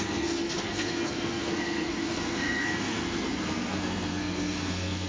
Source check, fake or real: fake